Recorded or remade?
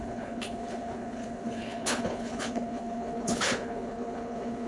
remade